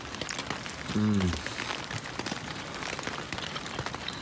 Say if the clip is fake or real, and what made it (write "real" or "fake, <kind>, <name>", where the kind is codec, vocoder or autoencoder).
real